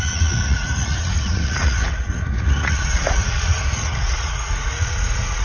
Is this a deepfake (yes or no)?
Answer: yes